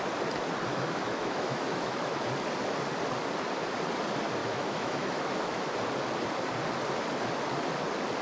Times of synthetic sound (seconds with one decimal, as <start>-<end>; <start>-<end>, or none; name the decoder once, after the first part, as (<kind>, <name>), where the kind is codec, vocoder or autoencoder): 0.7-2.2 (autoencoder, DAC-VAE); 4.4-5.7